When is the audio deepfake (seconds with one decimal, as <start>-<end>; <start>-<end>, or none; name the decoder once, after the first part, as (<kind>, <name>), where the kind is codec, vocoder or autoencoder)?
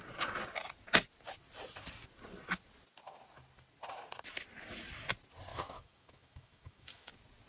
5.5-7.1 (autoencoder, DAC-VAE)